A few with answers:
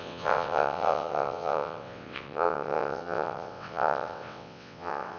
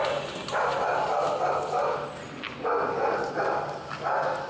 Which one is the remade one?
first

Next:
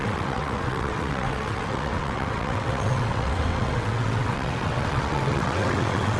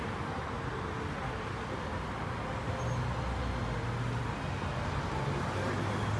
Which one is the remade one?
first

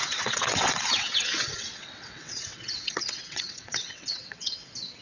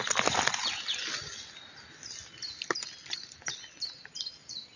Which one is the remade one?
first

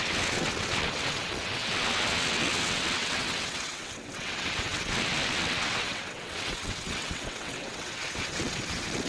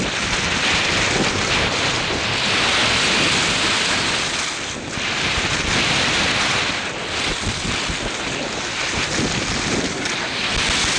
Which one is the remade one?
first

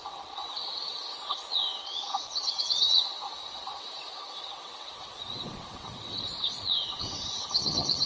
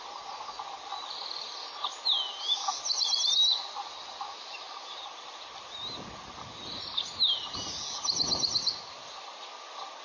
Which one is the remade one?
first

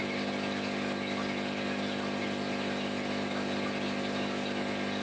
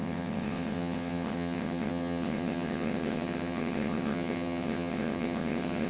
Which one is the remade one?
second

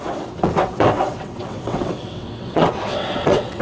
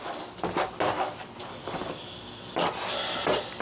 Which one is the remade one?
first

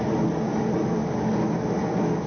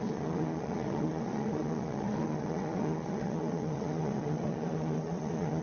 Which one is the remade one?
second